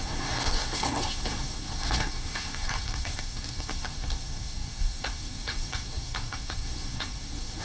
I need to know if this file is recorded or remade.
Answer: remade